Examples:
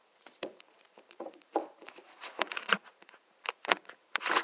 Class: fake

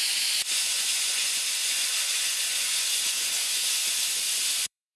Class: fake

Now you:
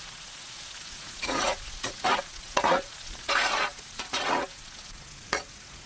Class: fake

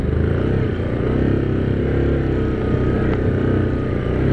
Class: real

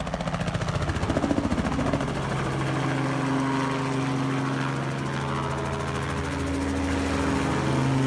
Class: real